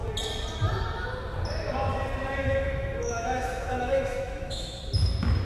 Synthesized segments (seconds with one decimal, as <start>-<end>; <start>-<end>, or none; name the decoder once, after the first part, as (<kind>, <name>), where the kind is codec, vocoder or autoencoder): 2.4-4.8 (autoencoder, DAC-VAE)